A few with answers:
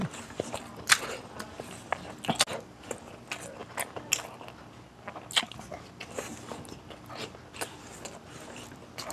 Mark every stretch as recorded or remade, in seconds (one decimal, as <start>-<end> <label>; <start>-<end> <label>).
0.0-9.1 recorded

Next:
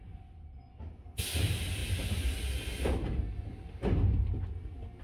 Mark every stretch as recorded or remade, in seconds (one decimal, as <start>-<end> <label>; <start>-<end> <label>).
0.0-5.0 recorded

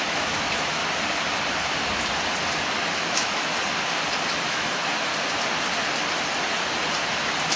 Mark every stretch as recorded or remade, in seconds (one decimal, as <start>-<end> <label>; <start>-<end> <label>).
0.0-0.8 remade; 0.8-2.9 recorded; 2.9-3.6 remade; 3.6-4.5 recorded; 4.5-5.1 remade; 5.1-7.6 recorded

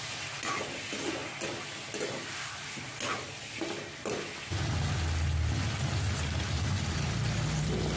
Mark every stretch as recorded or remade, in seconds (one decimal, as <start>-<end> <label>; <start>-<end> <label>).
0.0-8.0 recorded